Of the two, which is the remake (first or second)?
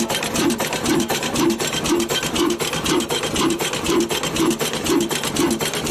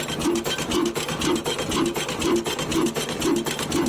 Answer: first